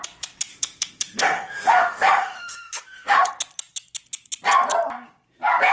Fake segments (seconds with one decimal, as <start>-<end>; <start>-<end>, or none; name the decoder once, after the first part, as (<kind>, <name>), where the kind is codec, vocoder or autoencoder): 0.5-3.3 (autoencoder, DAC-VAE)